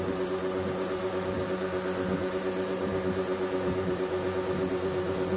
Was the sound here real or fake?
fake